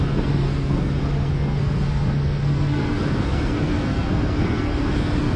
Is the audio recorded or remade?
remade